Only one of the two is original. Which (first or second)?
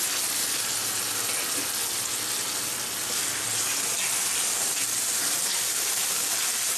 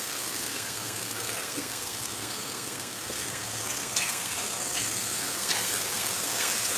first